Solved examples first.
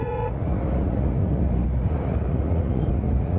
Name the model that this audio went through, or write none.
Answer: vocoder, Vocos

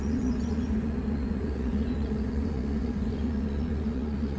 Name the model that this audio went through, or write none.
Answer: vocoder, Vocos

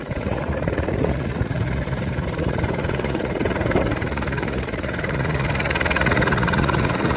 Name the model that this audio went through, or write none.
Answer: vocoder, Vocos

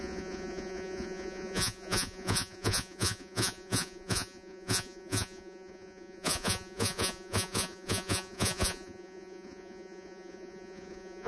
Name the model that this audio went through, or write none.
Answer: vocoder, Vocos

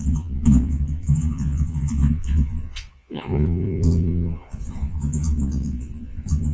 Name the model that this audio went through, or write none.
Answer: vocoder, Vocos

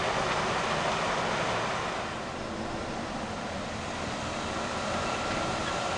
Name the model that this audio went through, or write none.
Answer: none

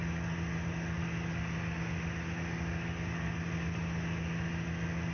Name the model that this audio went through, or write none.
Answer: none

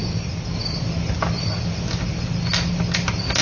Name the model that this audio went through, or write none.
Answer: none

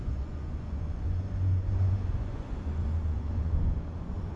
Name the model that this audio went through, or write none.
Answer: vocoder, Vocos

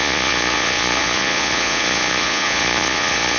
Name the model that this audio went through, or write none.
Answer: vocoder, Vocos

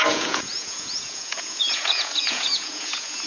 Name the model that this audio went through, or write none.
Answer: vocoder, Vocos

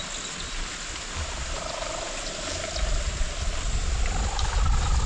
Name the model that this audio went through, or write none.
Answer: none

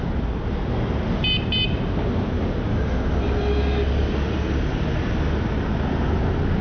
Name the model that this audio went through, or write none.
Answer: none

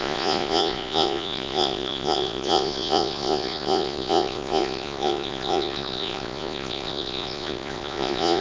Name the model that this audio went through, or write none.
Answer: vocoder, Vocos